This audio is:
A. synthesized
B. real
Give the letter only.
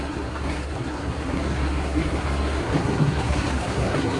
A